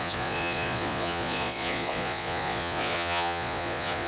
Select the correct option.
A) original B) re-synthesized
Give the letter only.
B